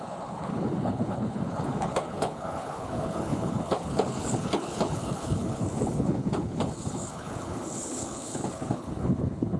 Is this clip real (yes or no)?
no